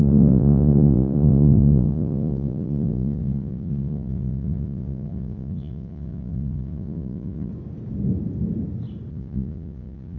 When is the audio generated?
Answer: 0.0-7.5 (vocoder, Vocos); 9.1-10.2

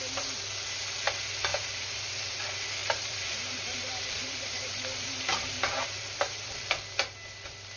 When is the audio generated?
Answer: 1.5-2.4 (vocoder, BigVGAN v2); 2.8-6.5

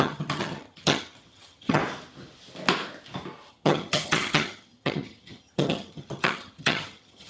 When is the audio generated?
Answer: 0.0-1.8 (vocoder, HiFi-GAN); 3.5-7.3

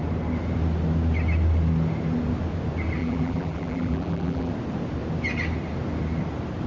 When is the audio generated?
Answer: 3.0-4.5 (vocoder, BigVGAN v2)

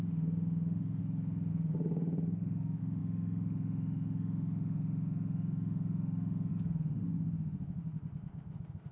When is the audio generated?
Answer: 0.0-1.0 (autoencoder, DAC-VAE); 1.5-8.9

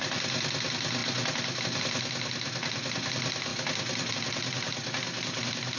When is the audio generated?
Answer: none

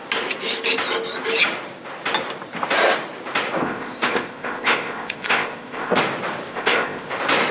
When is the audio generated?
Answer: 3.6-6.0 (codec, ZipCodec); 6.5-7.1